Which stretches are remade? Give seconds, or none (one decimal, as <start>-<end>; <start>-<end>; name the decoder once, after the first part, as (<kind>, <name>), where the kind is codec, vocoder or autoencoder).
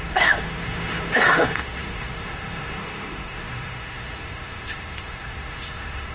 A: 0.0-6.1 (autoencoder, DAC-VAE)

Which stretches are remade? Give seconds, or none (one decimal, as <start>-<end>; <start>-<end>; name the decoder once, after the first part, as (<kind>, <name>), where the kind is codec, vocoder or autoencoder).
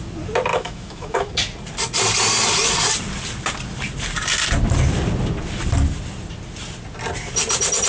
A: 0.5-1.3 (autoencoder, DAC-VAE)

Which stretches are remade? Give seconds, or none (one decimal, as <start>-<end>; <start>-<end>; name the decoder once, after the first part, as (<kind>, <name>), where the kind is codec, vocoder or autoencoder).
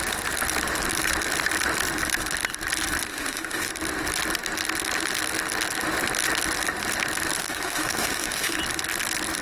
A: 3.1-3.7 (autoencoder, DAC-VAE); 7.4-8.6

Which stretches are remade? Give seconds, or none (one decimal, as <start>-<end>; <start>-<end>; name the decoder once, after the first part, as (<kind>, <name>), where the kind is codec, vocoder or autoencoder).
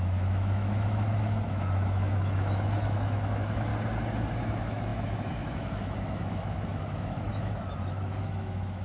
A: 0.0-3.7 (autoencoder, DAC-VAE); 4.4-8.8